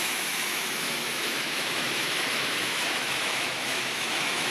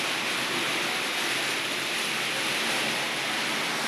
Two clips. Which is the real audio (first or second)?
second